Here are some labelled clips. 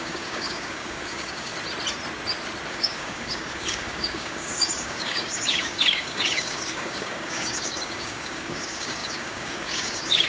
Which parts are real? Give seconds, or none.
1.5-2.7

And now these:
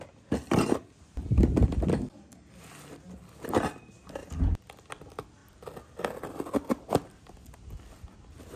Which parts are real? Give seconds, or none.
0.0-1.9; 2.6-8.6

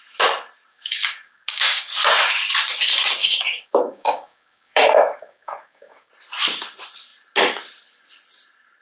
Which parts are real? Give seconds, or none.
0.0-0.7; 1.9-3.2; 6.1-8.8

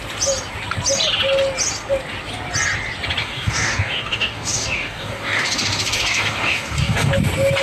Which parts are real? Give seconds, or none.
0.0-3.2; 7.1-7.6

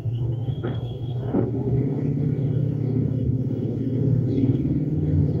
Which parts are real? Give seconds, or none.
none